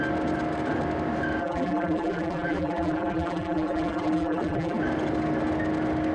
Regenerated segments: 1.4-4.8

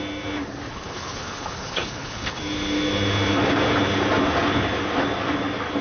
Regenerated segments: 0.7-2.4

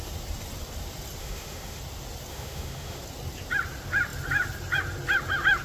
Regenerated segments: 1.2-1.8; 2.3-3.0